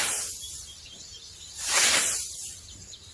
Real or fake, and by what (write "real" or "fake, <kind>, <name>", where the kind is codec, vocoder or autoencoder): fake, vocoder, BigVGAN v2